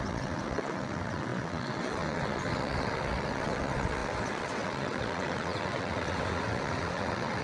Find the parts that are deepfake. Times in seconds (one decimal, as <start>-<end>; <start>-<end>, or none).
0.0-7.4